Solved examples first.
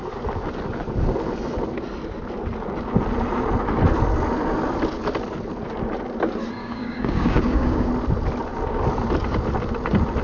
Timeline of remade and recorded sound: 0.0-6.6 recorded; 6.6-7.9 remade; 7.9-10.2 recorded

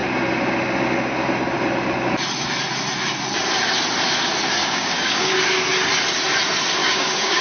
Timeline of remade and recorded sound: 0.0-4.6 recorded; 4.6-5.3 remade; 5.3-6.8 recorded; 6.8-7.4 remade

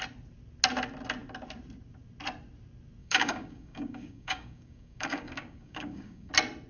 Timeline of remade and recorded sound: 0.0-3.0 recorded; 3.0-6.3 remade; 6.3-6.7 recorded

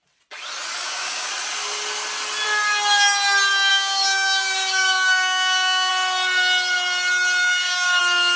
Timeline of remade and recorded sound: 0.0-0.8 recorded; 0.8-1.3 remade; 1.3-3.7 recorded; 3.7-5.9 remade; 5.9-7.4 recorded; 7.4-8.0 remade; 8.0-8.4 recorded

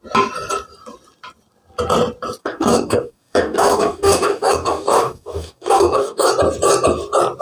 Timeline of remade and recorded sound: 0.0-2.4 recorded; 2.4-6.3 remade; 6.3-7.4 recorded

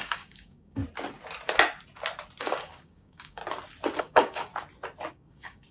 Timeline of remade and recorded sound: 0.0-0.8 remade; 0.8-2.4 recorded; 2.4-3.4 remade; 3.4-4.0 recorded; 4.0-4.5 remade; 4.5-5.1 recorded; 5.1-5.7 remade